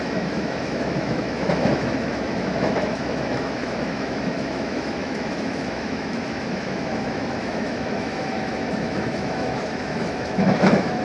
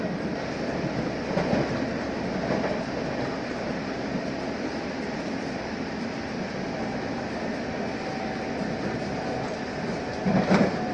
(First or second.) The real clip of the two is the second